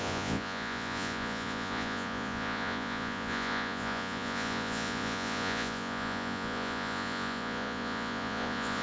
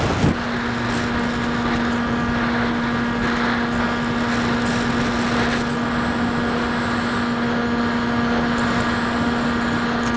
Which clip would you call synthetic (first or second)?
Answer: first